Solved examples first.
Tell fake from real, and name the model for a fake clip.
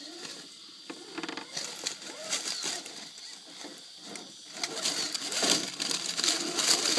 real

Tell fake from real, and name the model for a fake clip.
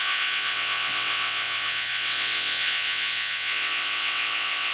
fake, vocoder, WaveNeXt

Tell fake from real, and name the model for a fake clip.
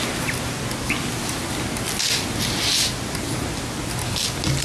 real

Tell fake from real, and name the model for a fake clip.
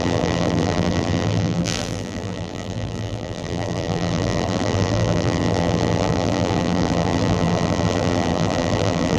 fake, vocoder, BigVGAN v2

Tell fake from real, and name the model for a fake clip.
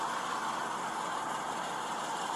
real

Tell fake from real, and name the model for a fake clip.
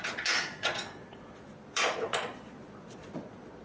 fake, vocoder, Vocos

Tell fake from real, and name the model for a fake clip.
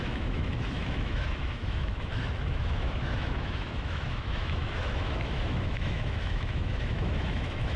fake, autoencoder, DAC-VAE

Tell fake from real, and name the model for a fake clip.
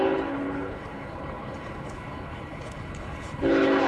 fake, codec, HILCodec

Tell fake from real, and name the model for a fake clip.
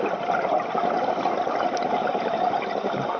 real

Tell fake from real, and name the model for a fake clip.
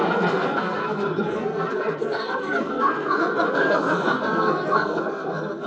fake, codec, SNAC